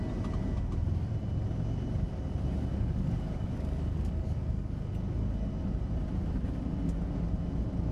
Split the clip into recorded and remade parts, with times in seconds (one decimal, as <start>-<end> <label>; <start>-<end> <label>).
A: 0.0-2.7 recorded; 2.7-4.9 remade; 4.9-7.9 recorded